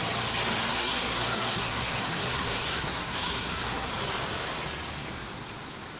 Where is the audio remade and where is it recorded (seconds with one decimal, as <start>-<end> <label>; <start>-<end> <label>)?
0.0-0.7 recorded; 0.7-3.9 remade; 3.9-6.0 recorded